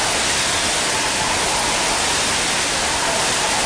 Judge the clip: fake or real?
real